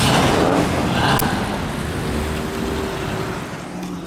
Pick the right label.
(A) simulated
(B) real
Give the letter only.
B